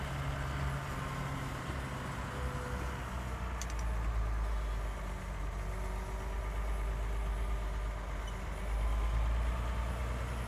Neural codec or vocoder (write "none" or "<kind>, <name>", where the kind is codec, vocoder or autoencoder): none